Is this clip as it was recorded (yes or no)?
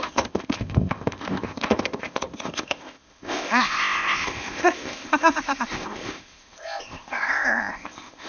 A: no